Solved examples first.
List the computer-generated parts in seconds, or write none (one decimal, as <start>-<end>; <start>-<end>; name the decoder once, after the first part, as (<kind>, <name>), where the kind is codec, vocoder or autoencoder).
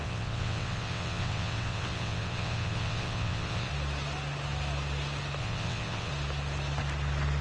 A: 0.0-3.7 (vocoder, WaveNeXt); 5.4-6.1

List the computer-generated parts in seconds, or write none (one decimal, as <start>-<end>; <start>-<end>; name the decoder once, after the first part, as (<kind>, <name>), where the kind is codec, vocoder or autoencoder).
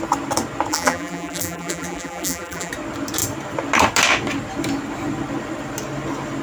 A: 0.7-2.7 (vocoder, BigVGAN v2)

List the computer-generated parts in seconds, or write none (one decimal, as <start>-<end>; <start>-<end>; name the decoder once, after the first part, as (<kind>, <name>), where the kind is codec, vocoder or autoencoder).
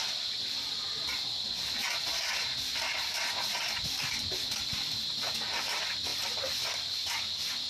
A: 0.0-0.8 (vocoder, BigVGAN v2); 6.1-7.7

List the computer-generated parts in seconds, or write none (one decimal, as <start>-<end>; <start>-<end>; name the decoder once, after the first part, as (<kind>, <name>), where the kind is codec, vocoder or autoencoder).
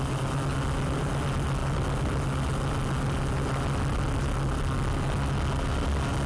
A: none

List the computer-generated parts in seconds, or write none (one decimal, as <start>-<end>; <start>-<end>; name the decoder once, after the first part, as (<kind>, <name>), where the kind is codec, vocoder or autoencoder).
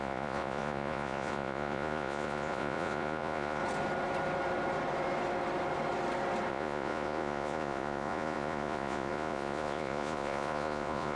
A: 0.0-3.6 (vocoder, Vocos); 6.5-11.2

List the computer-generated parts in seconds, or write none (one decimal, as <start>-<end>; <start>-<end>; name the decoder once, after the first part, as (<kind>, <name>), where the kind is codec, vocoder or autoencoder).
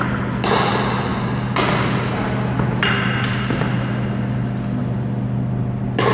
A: none